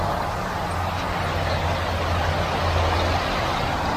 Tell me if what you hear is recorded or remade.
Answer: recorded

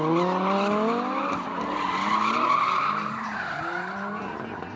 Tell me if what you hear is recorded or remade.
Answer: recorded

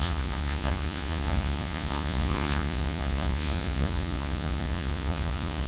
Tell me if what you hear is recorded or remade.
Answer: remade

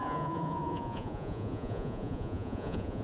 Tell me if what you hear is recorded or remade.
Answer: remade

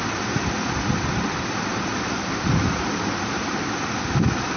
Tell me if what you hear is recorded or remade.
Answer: recorded